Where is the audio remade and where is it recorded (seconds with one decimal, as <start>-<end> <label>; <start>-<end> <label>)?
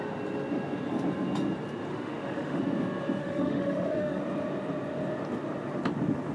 0.0-1.9 recorded; 1.9-2.6 remade; 2.6-3.2 recorded; 3.2-4.2 remade; 4.2-6.3 recorded